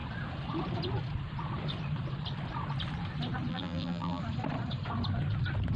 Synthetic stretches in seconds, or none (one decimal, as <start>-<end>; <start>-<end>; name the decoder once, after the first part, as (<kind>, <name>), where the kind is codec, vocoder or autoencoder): 3.5-4.2 (vocoder, BigVGAN v2)